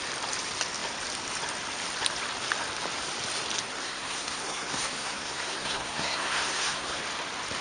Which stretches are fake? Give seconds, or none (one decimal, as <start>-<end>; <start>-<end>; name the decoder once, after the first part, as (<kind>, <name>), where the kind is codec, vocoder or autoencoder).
3.8-7.0 (codec, SNAC)